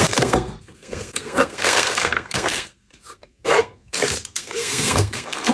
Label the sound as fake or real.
fake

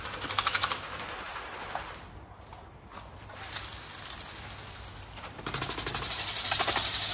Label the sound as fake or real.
real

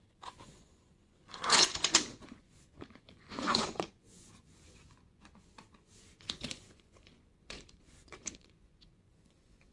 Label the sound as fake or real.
fake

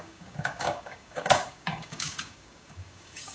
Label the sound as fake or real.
fake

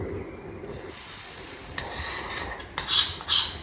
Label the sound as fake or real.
real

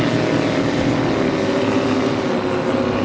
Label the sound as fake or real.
real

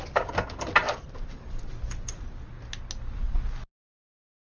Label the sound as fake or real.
real